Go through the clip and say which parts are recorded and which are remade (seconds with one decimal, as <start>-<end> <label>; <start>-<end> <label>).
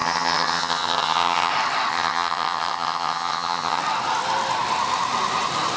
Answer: 0.0-1.5 remade; 1.5-1.9 recorded; 1.9-3.8 remade; 3.8-5.8 recorded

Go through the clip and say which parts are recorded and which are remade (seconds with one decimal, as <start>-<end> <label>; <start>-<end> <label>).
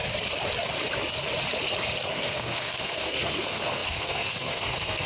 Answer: 0.0-2.1 recorded; 2.1-5.1 remade